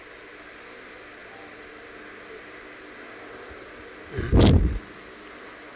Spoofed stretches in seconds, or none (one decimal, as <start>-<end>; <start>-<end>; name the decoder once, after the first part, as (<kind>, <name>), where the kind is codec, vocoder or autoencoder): none